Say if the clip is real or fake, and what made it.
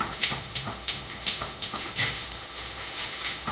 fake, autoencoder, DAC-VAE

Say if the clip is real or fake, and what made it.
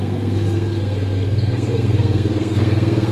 fake, codec, SNAC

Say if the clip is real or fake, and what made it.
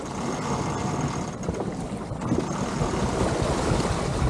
real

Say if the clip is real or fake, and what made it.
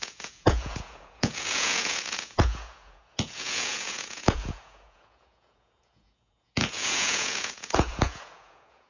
fake, vocoder, Vocos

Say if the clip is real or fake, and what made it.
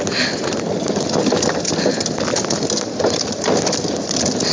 real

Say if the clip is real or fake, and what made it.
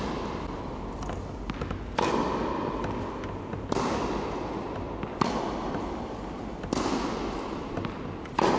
real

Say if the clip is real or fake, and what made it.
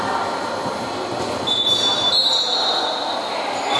real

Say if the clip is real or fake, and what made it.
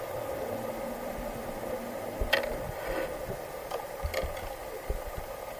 real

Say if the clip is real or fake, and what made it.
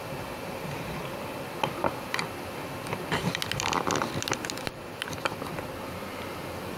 real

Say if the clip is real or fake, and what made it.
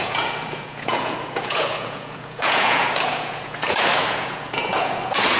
fake, vocoder, Vocos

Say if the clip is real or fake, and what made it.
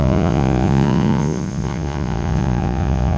fake, vocoder, Vocos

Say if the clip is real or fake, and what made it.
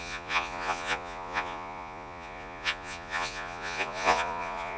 fake, vocoder, Vocos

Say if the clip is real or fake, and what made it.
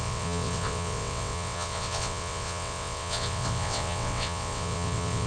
fake, vocoder, WaveNeXt